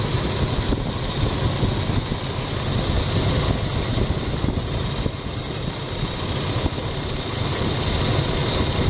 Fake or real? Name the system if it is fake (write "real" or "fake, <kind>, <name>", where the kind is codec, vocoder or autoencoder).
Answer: real